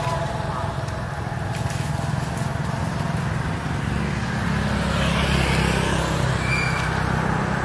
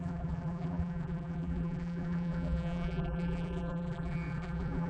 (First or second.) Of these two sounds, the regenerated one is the second